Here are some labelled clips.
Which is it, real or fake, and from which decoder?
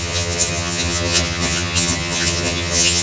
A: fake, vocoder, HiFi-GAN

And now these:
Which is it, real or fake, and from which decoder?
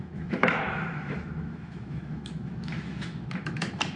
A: fake, autoencoder, DAC-VAE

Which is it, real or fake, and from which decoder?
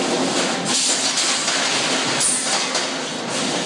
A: real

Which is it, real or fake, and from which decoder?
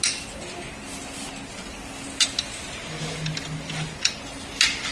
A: real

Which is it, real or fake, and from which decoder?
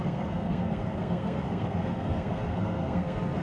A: fake, codec, SNAC